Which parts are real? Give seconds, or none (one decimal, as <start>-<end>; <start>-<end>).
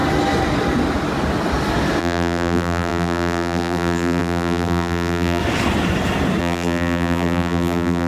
0.0-2.0; 5.4-6.4